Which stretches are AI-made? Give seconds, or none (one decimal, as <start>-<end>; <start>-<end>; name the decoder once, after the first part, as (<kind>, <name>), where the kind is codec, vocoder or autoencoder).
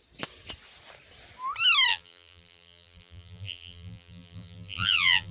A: 1.9-5.3 (vocoder, BigVGAN v2)